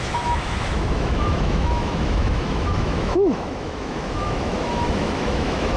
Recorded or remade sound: remade